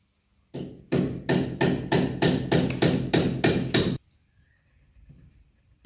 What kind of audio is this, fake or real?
real